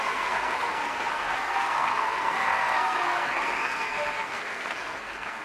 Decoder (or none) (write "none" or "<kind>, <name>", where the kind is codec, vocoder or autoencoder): codec, SNAC